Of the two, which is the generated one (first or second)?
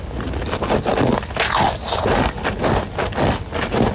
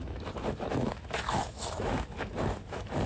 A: second